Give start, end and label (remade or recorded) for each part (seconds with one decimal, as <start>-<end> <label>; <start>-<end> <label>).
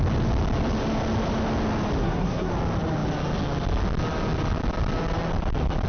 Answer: 0.0-2.0 recorded; 2.0-2.5 remade; 2.5-5.9 recorded